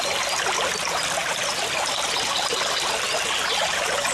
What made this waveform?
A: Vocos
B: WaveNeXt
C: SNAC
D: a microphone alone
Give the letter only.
D